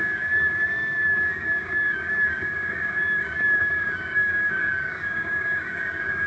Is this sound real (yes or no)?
no